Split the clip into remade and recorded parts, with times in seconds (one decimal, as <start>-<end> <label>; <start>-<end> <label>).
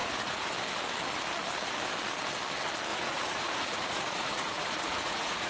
0.0-0.5 remade; 0.5-2.9 recorded; 2.9-5.5 remade